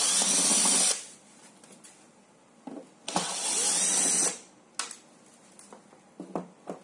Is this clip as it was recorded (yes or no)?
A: yes